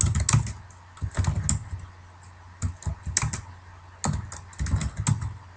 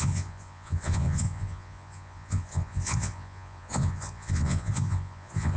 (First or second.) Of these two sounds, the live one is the first